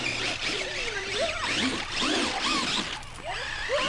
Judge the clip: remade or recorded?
recorded